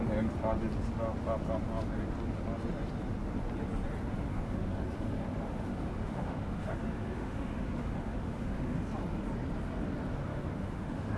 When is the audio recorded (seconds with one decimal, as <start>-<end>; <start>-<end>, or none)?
0.0-4.3; 8.7-10.3